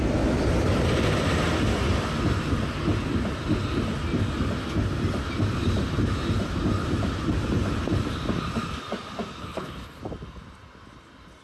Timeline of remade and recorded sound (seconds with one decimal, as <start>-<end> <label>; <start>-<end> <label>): 0.0-9.4 recorded; 9.4-10.0 remade; 10.0-11.4 recorded